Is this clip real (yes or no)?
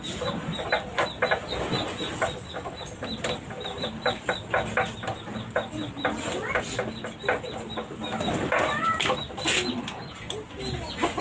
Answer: yes